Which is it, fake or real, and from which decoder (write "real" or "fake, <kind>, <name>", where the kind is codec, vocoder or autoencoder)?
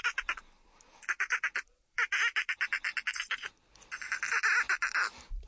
fake, vocoder, BigVGAN v2